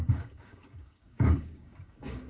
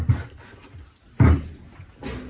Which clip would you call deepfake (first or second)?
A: first